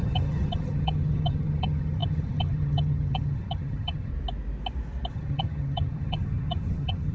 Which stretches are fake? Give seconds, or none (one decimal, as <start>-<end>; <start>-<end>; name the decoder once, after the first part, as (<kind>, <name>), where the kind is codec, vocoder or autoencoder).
0.0-4.1 (vocoder, HiFi-GAN); 5.1-7.1